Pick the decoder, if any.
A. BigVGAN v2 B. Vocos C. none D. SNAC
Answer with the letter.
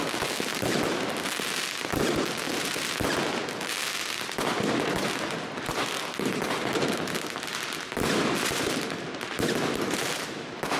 C